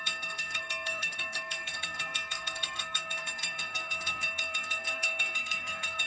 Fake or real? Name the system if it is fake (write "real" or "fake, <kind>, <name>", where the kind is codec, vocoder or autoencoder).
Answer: fake, codec, SNAC